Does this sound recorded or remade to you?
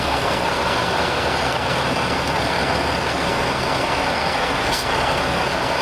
remade